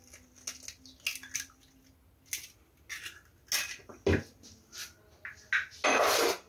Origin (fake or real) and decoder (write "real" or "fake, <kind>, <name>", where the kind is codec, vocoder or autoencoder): real